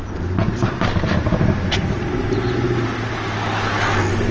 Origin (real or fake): real